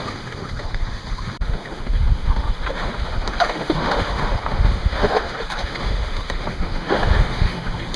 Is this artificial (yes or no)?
yes